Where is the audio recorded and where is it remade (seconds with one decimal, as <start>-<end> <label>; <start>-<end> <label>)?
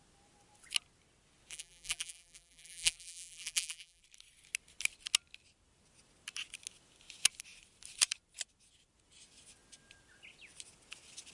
0.0-1.5 recorded; 1.5-4.0 remade; 4.0-11.3 recorded